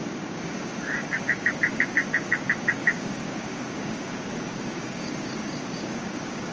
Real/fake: fake